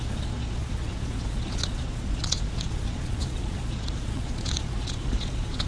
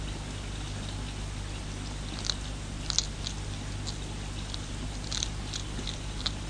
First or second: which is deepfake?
first